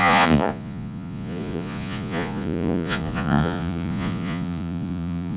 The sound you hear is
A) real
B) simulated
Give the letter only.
B